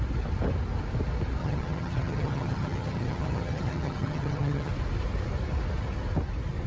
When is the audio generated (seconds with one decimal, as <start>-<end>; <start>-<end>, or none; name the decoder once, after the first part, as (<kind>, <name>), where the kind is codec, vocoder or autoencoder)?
1.4-4.7 (vocoder, HiFi-GAN)